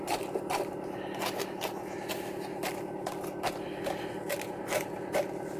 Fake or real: real